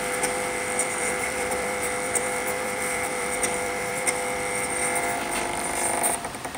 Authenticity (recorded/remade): remade